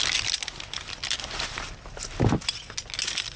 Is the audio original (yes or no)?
yes